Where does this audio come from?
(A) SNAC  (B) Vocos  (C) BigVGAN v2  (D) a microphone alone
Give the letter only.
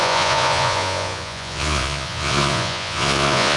B